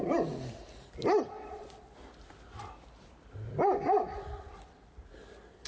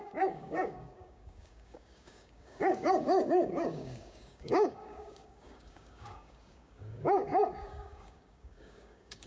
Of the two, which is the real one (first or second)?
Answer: first